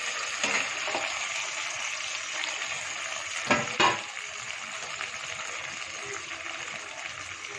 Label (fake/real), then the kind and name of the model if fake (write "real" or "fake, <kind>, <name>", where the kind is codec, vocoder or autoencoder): real